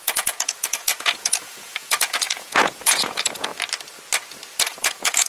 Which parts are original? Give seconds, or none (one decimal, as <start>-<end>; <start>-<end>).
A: 3.5-4.6